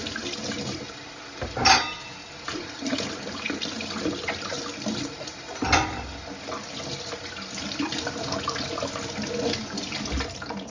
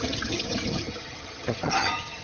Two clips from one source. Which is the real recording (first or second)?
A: first